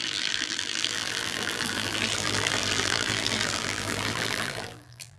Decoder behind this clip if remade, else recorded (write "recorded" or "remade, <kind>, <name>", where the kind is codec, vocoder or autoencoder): remade, vocoder, BigVGAN v2